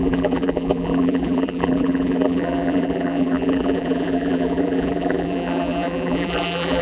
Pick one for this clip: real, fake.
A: fake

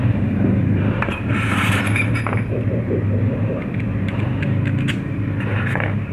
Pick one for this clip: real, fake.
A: fake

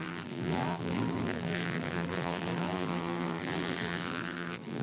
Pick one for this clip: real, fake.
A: fake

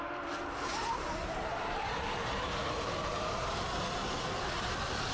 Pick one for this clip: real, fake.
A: fake